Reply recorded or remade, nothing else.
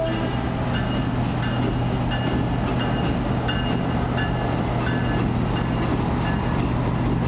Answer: recorded